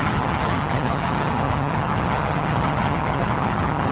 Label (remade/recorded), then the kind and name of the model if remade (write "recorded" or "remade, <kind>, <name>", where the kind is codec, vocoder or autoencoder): remade, vocoder, HiFi-GAN